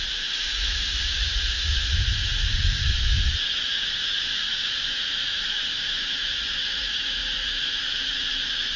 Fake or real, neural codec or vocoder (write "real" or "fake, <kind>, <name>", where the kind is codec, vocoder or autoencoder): fake, autoencoder, DAC-VAE